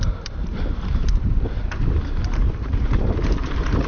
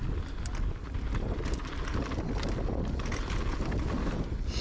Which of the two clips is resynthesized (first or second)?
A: first